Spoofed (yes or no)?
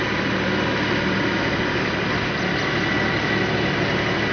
no